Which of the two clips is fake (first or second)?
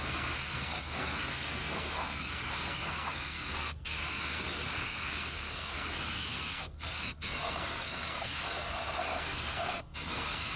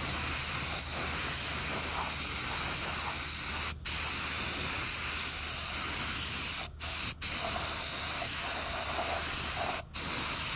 first